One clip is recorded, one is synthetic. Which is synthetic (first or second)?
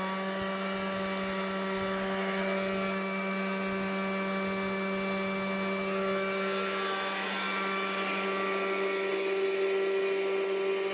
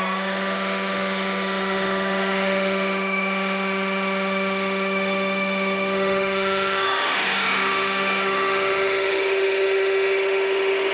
second